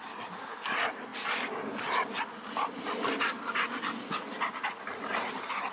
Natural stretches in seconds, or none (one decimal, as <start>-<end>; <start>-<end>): 0.0-5.7